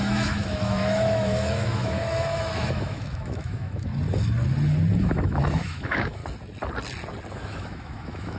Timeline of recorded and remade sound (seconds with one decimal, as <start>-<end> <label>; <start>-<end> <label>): 0.0-3.9 remade; 3.9-5.0 recorded; 5.0-6.2 remade; 6.2-7.3 recorded; 7.3-8.4 remade

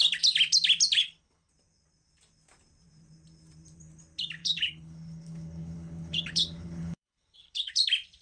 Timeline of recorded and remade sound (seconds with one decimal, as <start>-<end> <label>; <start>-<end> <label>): 0.0-1.0 recorded; 1.0-1.5 remade; 1.5-4.4 recorded; 4.4-7.7 remade; 7.7-8.2 recorded

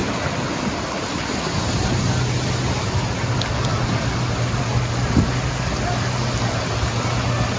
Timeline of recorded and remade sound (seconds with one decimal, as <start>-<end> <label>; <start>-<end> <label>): 0.0-7.6 recorded

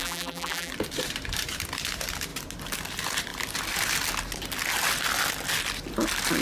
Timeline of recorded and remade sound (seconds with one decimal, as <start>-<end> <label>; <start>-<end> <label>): 0.0-0.7 remade; 0.7-6.4 recorded

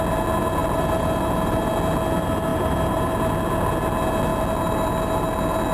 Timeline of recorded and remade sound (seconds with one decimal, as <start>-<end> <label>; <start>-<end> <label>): 0.0-0.6 recorded; 0.6-1.7 remade; 1.7-2.5 recorded; 2.5-3.1 remade; 3.1-5.7 recorded

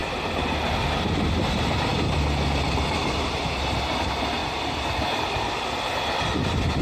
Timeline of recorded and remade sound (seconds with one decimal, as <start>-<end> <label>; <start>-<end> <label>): 0.0-6.8 recorded

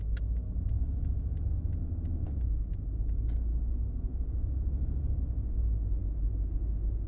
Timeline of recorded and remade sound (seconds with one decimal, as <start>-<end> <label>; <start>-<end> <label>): 0.0-7.1 recorded